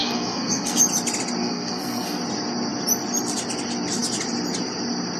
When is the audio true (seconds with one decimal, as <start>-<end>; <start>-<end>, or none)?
0.8-1.4; 2.2-5.2